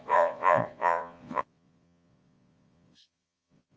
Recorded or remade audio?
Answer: remade